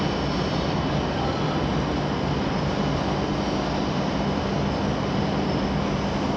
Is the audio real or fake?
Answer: real